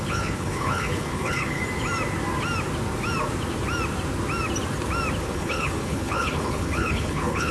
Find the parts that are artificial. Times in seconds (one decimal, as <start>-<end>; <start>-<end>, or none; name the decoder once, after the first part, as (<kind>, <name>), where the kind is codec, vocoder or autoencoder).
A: 0.0-1.6 (codec, HILCodec); 5.2-7.5